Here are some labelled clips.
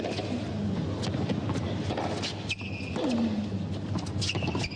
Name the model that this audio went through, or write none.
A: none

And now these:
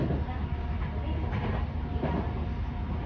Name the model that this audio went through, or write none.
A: none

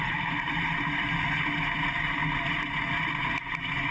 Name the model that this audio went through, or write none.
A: none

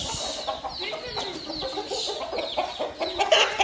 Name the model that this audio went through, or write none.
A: vocoder, BigVGAN v2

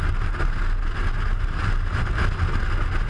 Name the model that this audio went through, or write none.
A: none